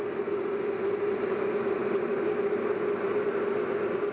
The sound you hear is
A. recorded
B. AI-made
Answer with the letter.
A